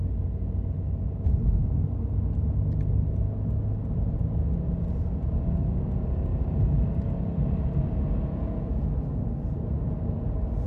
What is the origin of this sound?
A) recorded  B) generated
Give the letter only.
A